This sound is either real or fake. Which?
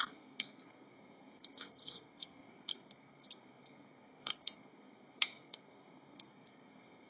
fake